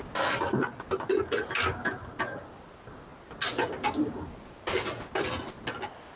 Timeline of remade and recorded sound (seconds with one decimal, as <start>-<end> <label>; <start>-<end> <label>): 0.0-6.2 recorded